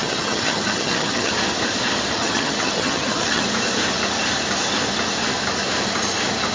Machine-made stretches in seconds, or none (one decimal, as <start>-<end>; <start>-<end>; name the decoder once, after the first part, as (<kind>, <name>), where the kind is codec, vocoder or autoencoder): 0.0-1.3 (vocoder, HiFi-GAN); 2.2-3.4